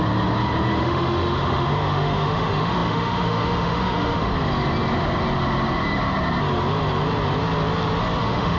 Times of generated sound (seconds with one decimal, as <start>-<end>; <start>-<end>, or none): 0.8-4.3; 8.2-8.6